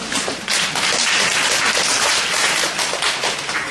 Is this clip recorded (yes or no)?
no